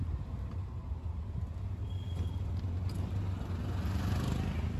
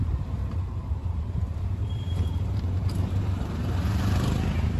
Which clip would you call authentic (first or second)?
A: first